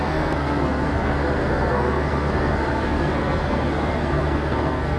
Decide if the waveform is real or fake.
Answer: fake